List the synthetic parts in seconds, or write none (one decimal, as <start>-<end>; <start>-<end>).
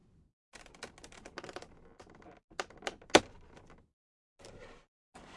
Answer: none